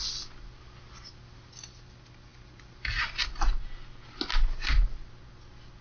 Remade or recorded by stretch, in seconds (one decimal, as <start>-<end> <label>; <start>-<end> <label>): 0.0-5.8 recorded